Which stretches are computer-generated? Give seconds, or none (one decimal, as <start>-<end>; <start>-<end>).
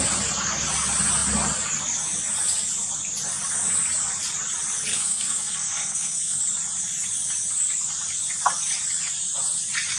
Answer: 4.9-6.4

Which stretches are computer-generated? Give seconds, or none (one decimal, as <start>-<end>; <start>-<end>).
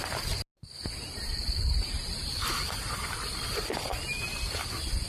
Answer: none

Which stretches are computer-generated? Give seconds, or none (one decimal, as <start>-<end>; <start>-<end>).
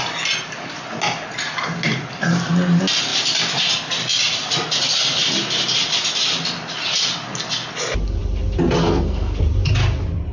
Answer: 8.8-9.4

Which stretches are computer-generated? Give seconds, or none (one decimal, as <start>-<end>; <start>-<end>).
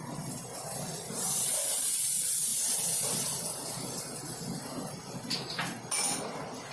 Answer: none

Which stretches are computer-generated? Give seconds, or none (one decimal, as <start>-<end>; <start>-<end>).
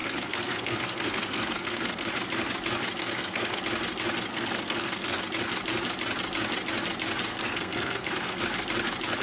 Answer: 0.0-2.1; 3.0-3.6; 4.3-5.2; 7.3-8.4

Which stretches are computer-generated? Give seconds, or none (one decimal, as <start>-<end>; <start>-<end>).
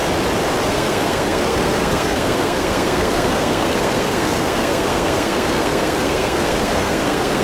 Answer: 0.7-7.4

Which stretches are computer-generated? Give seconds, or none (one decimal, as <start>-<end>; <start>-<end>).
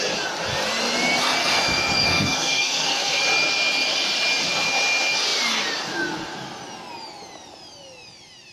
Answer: 1.4-3.2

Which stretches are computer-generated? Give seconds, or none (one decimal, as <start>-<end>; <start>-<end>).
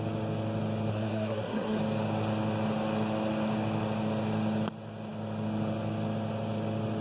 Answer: 0.9-1.8